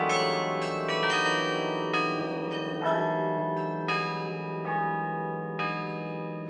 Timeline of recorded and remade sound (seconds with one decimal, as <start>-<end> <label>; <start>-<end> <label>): 0.0-2.2 recorded; 2.2-3.0 remade; 3.0-6.5 recorded